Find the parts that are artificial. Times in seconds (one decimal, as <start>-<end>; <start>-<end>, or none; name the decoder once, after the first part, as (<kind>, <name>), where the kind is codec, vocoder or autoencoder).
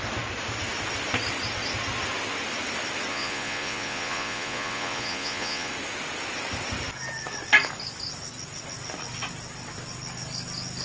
3.1-5.7 (vocoder, Vocos)